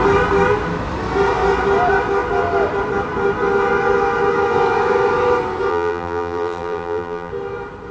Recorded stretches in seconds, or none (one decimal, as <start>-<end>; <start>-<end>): 0.0-5.7; 7.3-7.9